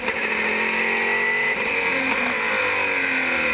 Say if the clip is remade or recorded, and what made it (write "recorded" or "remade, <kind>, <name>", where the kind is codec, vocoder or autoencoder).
recorded